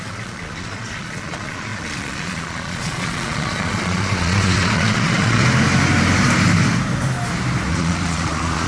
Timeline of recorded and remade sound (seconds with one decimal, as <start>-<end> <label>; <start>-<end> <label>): 0.0-5.4 remade; 5.4-7.7 recorded; 7.7-8.7 remade